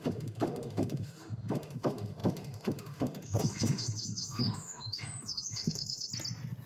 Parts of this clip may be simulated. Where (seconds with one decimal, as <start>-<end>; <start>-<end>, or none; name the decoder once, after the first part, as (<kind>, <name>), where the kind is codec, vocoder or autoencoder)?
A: 0.0-6.1 (autoencoder, DAC-VAE)